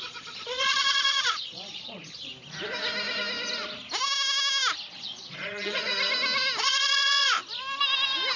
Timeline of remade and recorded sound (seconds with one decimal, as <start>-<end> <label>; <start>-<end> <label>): 0.0-2.3 remade; 2.3-4.9 recorded; 4.9-5.9 remade; 5.9-6.6 recorded; 6.6-7.4 remade; 7.4-8.4 recorded